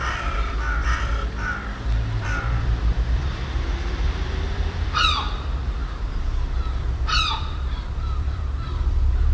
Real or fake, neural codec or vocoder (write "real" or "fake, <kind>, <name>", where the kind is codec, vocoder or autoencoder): fake, vocoder, BigVGAN v2